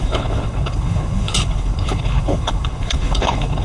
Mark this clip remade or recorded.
remade